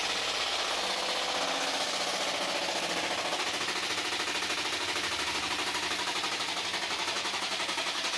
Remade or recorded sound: recorded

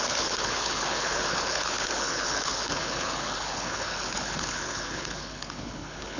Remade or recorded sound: remade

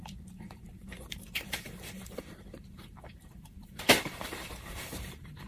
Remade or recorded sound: remade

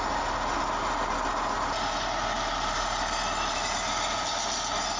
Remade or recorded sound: recorded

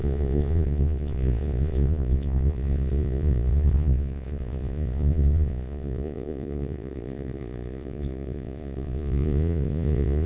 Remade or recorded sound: remade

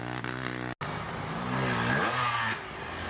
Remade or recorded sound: recorded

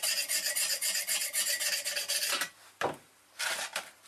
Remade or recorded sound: remade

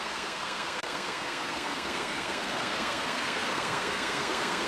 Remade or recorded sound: remade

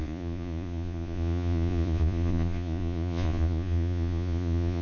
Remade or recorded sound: remade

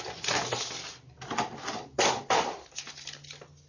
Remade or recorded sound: recorded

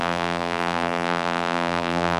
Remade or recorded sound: remade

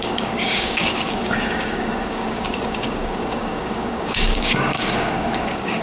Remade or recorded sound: remade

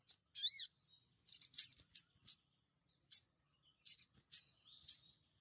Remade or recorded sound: recorded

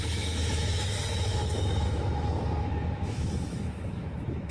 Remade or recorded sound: remade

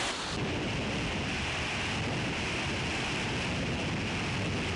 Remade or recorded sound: recorded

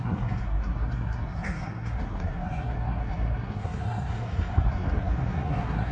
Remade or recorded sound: remade